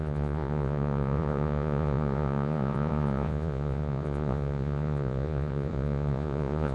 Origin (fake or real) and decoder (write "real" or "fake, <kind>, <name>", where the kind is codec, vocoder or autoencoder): fake, vocoder, Vocos